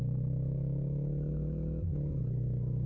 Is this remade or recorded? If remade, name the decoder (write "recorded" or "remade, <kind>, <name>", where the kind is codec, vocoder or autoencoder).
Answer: remade, autoencoder, DAC-VAE